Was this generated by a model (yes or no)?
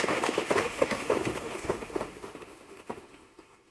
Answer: yes